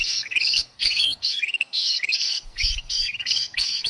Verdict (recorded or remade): remade